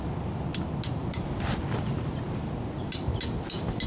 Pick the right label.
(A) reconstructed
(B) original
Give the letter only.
B